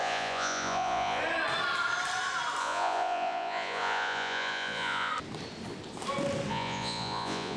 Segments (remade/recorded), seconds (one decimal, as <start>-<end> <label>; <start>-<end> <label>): 0.0-1.2 remade; 1.2-2.6 recorded; 2.6-5.1 remade; 5.1-6.5 recorded; 6.5-7.6 remade